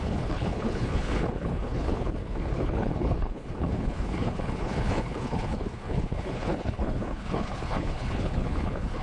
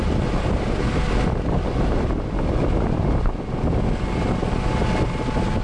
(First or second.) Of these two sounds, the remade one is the first